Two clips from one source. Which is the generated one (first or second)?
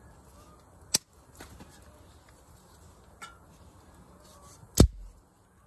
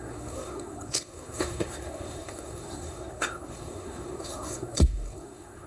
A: second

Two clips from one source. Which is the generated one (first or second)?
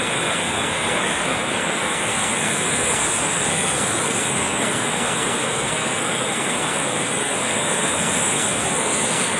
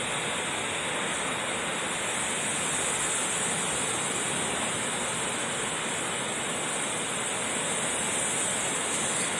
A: first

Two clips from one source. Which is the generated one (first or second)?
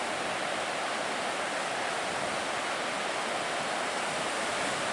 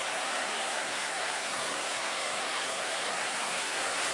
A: second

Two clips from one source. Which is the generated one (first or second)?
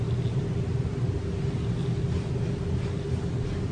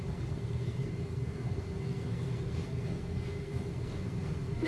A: second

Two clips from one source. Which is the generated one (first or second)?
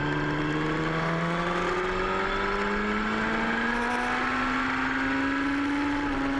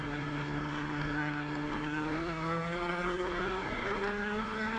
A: second